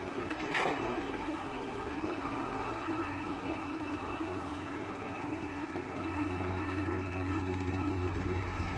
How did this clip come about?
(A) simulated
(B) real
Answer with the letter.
A